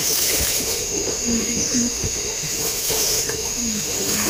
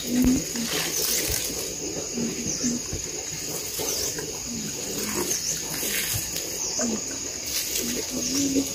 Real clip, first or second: second